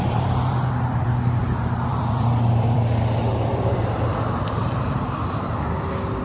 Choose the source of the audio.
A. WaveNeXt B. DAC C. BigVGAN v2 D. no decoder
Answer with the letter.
C